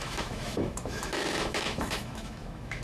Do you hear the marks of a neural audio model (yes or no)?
yes